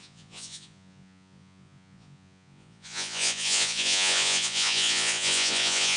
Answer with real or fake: fake